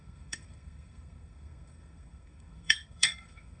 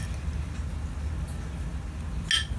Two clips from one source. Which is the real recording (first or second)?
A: second